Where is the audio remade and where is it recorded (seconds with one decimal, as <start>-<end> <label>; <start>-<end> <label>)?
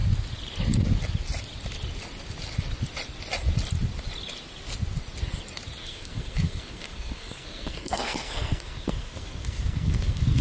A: 0.0-5.8 recorded; 5.8-10.4 remade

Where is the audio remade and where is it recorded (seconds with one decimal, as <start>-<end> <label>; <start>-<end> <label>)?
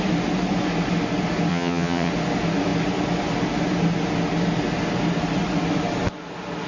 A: 0.0-1.5 recorded; 1.5-2.1 remade; 2.1-6.7 recorded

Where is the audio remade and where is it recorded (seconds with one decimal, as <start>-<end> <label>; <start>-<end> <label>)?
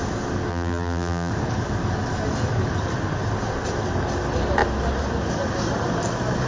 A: 0.0-0.5 recorded; 0.5-1.3 remade; 1.3-6.5 recorded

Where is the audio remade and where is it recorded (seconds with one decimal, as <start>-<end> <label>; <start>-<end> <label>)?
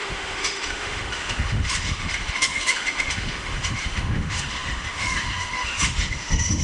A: 0.0-6.6 remade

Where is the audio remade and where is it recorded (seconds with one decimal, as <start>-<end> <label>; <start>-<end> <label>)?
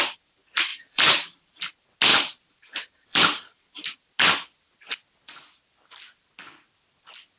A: 0.0-0.7 recorded; 0.7-1.6 remade; 1.6-2.1 recorded; 2.1-4.1 remade; 4.1-7.4 recorded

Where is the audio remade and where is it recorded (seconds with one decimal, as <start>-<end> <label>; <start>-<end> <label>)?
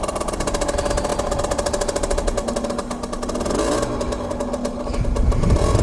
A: 0.0-5.8 recorded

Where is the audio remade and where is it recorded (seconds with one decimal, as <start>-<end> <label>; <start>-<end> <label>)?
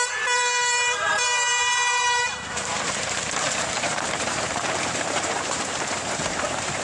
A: 0.0-6.8 remade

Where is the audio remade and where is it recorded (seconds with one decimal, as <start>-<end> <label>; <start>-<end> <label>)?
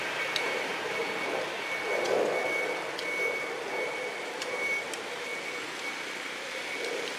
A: 0.0-1.0 remade; 1.0-3.8 recorded; 3.8-5.3 remade; 5.3-7.2 recorded